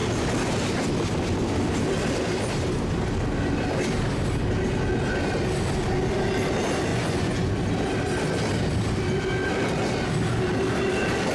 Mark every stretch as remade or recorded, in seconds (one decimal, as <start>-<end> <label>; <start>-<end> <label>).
0.0-6.9 recorded; 6.9-7.5 remade; 7.5-11.3 recorded